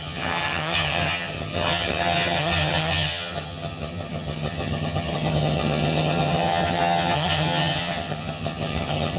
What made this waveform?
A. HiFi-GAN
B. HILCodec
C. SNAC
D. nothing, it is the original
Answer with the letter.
A